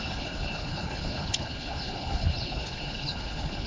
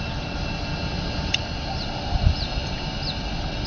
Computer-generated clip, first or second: first